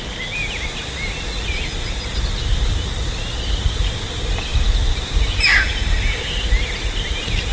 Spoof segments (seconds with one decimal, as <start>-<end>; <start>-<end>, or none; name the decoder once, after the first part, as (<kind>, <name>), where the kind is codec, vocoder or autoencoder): none